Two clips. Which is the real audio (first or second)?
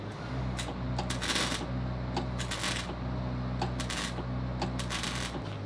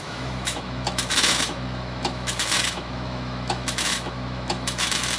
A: first